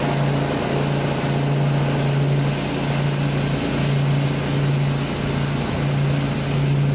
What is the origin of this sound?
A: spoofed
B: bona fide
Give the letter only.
B